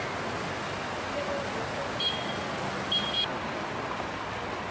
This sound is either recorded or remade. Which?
recorded